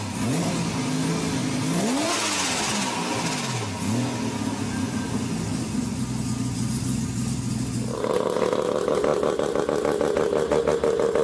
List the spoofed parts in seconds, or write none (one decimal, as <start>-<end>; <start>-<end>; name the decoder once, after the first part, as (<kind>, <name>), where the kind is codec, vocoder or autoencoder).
none

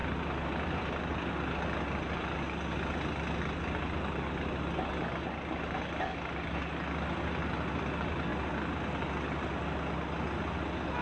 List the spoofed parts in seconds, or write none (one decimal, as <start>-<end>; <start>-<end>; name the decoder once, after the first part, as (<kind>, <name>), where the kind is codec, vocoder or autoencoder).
none

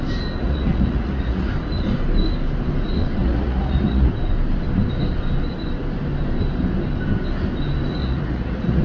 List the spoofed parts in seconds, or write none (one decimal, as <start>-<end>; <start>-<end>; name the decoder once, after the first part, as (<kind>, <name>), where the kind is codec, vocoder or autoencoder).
0.4-1.5 (vocoder, Vocos); 3.2-4.1; 8.0-8.8

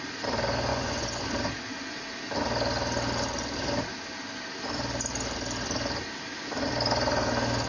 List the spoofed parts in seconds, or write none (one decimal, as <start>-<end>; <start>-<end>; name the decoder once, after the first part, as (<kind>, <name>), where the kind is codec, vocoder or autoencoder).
0.7-1.2 (vocoder, Vocos)

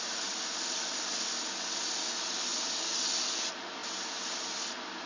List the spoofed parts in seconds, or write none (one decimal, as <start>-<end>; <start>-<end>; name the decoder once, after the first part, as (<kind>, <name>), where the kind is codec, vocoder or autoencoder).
none

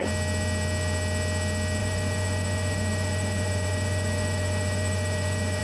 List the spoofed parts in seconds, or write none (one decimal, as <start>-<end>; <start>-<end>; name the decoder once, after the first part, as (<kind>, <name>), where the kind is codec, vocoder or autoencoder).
1.8-5.6 (vocoder, Vocos)